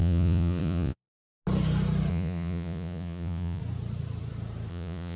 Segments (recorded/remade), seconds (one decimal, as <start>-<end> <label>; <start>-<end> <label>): 0.0-1.1 remade; 1.1-2.1 recorded; 2.1-3.6 remade; 3.6-4.7 recorded; 4.7-5.2 remade